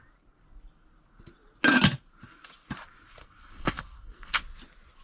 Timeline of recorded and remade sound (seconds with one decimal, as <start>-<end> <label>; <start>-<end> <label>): 0.0-3.2 recorded; 3.2-4.4 remade; 4.4-5.0 recorded